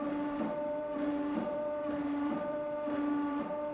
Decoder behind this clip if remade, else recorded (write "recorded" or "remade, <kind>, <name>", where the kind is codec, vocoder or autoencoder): remade, vocoder, BigVGAN v2